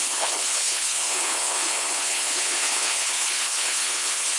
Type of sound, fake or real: fake